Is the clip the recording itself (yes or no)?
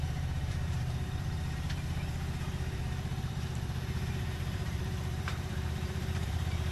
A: no